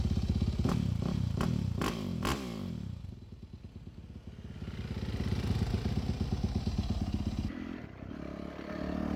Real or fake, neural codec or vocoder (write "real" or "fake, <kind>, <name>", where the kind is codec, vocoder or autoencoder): real